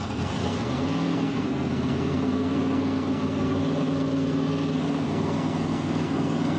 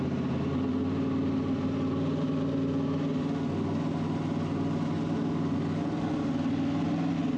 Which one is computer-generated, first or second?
first